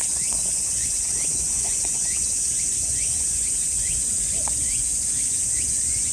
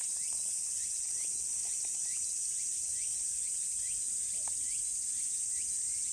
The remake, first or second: first